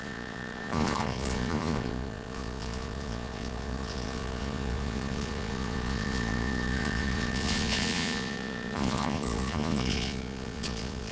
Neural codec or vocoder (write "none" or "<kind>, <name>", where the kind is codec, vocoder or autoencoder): vocoder, Vocos